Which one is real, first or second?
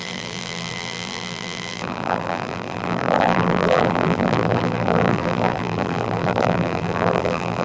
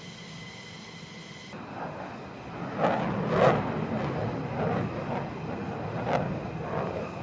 second